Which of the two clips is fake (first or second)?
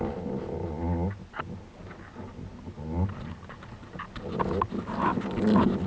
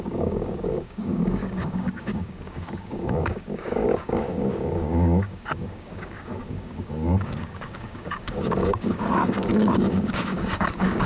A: second